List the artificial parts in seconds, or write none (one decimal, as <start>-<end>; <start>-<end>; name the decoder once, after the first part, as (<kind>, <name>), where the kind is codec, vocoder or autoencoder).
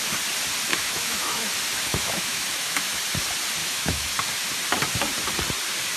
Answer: 0.7-1.5 (autoencoder, DAC-VAE); 1.9-3.0; 3.6-4.1